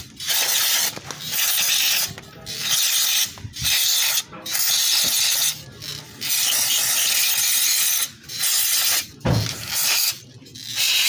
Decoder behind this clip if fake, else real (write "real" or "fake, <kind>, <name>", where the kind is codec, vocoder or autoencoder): real